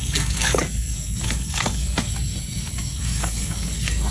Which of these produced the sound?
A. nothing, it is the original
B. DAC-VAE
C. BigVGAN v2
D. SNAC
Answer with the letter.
D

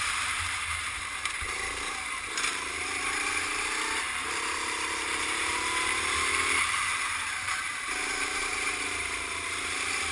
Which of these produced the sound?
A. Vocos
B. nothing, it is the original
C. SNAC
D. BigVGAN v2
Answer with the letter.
D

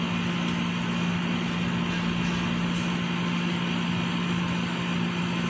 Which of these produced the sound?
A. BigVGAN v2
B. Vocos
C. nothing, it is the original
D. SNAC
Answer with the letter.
C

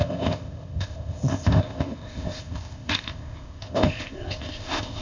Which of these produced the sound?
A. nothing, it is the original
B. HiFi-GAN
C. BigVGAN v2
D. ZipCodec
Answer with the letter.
D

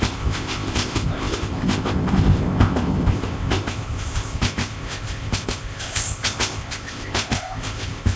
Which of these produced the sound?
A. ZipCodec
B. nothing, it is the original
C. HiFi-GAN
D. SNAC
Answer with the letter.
A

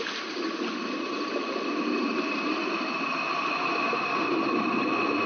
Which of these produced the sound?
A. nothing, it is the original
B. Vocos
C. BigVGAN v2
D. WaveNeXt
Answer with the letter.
A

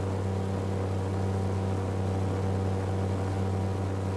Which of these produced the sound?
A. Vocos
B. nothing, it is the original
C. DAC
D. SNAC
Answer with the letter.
B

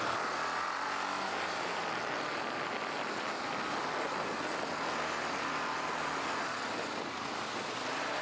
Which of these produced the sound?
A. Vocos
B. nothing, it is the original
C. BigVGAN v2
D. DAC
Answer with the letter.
B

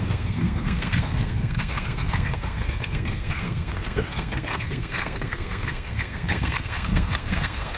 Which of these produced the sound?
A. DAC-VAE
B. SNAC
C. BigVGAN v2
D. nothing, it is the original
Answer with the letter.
B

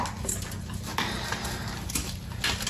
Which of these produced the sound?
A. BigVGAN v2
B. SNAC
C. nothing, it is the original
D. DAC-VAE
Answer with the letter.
C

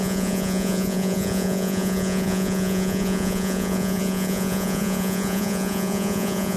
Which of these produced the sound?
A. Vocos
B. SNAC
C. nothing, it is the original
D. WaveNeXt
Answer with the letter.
A